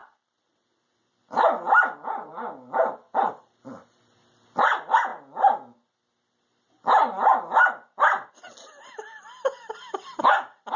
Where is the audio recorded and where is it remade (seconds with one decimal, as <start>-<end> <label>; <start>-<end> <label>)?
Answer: 0.0-10.8 recorded